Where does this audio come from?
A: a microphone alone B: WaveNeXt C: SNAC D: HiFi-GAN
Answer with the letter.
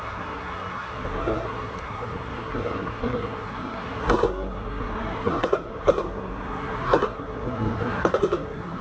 C